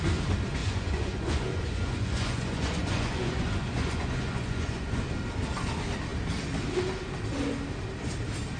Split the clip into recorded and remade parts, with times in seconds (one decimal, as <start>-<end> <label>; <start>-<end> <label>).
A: 0.0-0.6 recorded; 0.6-5.0 remade; 5.0-8.6 recorded